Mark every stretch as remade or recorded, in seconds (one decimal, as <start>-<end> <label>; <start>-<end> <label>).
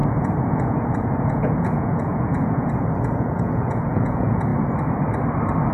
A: 0.0-4.5 remade; 4.5-5.7 recorded